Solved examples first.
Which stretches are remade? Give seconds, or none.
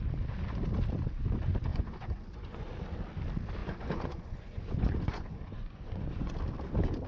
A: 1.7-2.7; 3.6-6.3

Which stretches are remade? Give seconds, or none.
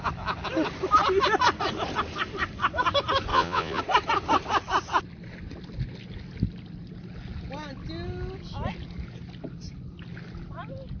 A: 3.3-3.8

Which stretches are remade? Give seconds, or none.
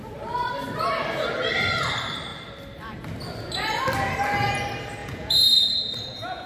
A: 5.0-6.5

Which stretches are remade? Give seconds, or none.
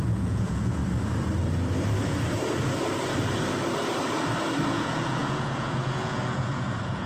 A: 0.0-0.8; 4.7-7.1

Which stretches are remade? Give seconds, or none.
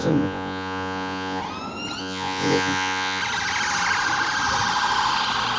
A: 0.0-1.4; 2.0-3.2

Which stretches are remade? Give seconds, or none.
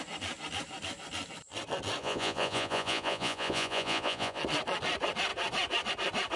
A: 2.0-4.4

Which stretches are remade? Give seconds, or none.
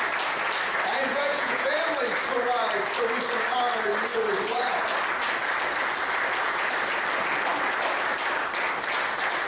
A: 1.1-1.7